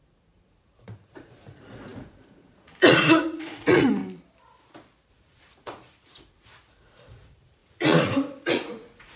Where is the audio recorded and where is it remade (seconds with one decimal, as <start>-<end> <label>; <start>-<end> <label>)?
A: 0.0-4.0 remade; 4.0-5.1 recorded; 5.1-9.2 remade